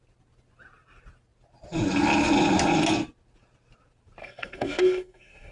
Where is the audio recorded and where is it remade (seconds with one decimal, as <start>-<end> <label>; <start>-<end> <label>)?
0.0-4.2 recorded; 4.2-5.5 remade